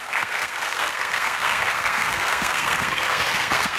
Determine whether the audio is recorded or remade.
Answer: remade